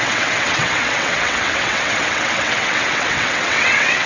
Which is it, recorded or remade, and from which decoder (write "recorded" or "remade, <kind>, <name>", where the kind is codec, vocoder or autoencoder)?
remade, vocoder, WaveNeXt